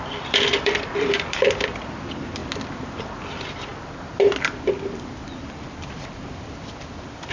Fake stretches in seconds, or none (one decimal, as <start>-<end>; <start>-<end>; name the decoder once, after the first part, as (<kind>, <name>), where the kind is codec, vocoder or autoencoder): 0.0-3.7 (vocoder, BigVGAN v2); 4.2-7.3

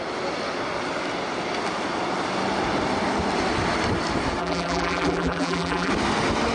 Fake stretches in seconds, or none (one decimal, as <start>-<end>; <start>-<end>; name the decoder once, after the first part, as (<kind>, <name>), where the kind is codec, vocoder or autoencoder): 4.4-5.9 (vocoder, BigVGAN v2)

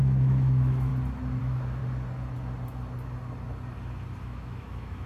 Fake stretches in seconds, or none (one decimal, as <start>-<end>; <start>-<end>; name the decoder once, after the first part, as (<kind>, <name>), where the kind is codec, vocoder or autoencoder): 0.0-0.9 (autoencoder, DAC-VAE); 1.4-1.8; 4.2-5.1

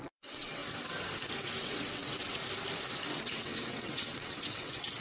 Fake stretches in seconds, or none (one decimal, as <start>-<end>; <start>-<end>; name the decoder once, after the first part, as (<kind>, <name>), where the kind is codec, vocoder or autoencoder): 0.0-0.6 (vocoder, WaveNeXt); 1.6-2.4; 3.1-5.0

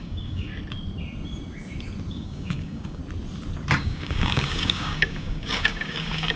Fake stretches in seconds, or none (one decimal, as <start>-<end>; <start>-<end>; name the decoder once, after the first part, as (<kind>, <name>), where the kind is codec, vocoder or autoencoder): 0.0-0.5 (codec, DAC); 2.1-3.0; 3.8-6.4